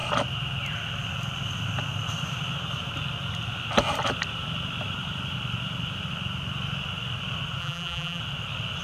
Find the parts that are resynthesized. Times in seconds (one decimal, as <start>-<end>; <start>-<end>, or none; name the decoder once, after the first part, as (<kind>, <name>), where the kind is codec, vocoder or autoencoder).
7.6-8.2 (vocoder, BigVGAN v2)